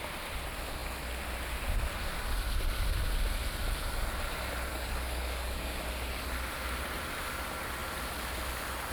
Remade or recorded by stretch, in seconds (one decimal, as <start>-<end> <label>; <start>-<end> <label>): 0.0-4.7 recorded; 4.7-5.8 remade; 5.8-8.9 recorded